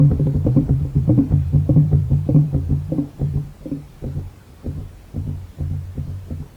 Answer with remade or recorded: remade